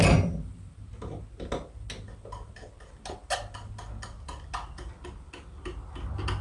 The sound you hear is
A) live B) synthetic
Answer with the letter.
A